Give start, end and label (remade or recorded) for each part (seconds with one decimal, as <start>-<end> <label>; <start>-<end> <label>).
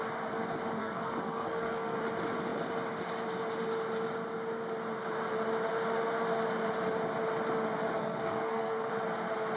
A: 0.0-0.8 recorded; 0.8-2.0 remade; 2.0-8.0 recorded; 8.0-8.9 remade; 8.9-9.6 recorded